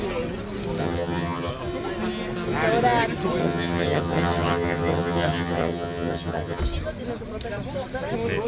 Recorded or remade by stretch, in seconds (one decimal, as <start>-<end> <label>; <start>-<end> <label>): 0.0-0.8 recorded; 0.8-1.5 remade; 1.5-3.4 recorded; 3.4-6.6 remade; 6.6-8.5 recorded